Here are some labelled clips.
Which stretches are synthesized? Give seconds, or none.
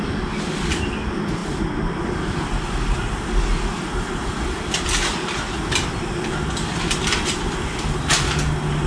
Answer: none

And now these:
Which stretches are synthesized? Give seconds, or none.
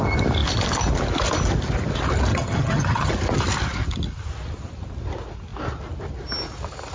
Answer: 2.3-3.1 (vocoder, HiFi-GAN)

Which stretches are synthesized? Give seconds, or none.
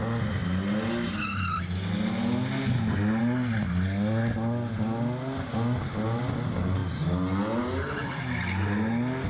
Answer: none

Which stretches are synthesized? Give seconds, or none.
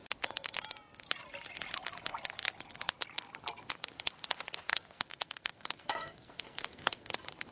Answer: 4.7-7.1 (codec, SNAC)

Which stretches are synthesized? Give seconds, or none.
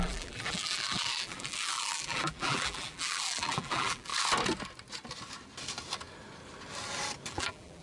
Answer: 0.0-4.1 (vocoder, BigVGAN v2); 7.3-7.8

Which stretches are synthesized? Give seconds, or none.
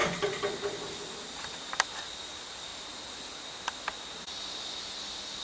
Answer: none